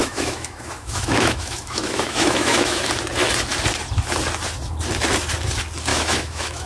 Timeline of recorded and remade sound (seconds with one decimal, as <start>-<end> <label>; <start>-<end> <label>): 0.0-2.9 remade; 2.9-5.9 recorded; 5.9-6.7 remade